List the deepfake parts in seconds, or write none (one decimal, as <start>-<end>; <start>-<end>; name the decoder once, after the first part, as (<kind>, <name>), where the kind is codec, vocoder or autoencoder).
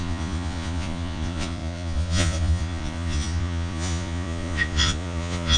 0.0-5.6 (vocoder, Vocos)